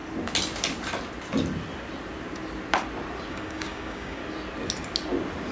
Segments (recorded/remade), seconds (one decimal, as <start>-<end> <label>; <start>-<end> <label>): 0.0-3.3 recorded; 3.3-4.2 remade; 4.2-5.5 recorded